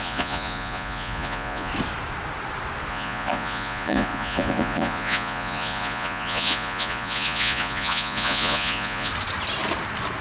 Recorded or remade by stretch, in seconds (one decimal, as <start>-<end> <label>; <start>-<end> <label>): 0.0-1.7 remade; 1.7-2.9 recorded; 2.9-9.1 remade; 9.1-10.2 recorded